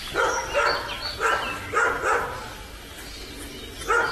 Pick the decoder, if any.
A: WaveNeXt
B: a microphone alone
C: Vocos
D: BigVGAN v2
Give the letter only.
B